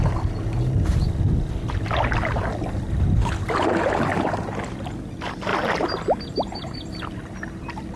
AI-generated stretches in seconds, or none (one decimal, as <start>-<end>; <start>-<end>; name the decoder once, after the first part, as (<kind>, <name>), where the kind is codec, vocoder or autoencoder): none